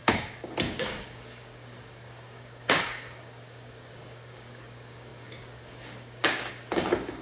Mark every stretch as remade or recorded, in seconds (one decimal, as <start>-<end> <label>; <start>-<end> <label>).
0.0-7.2 remade